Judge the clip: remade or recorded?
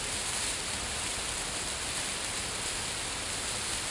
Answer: recorded